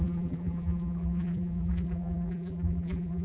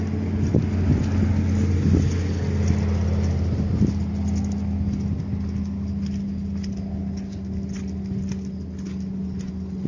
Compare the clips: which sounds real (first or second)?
second